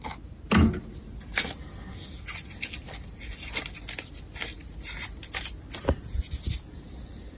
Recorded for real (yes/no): yes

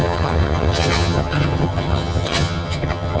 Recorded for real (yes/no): no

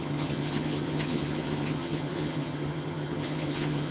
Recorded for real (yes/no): no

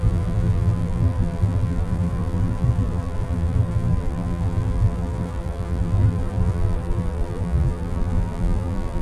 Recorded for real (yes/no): no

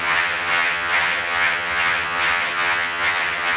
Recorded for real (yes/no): no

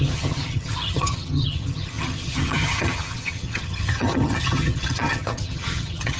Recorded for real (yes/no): no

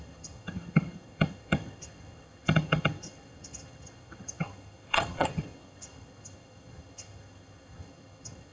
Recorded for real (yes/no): no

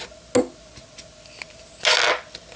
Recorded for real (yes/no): yes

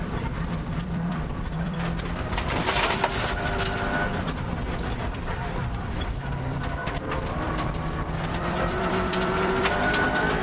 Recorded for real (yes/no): no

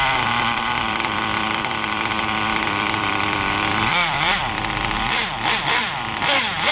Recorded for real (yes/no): no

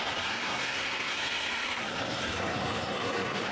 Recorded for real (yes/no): no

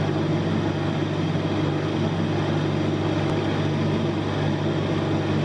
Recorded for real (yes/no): yes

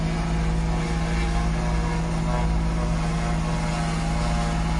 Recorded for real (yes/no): yes